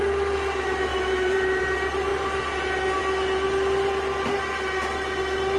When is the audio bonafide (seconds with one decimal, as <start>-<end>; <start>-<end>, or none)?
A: 0.0-0.9; 1.6-5.6